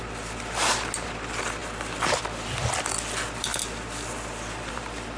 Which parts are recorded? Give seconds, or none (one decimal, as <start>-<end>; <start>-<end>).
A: 0.0-5.2